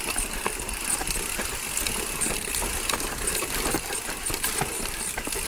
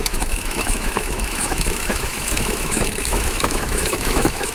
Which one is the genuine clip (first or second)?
first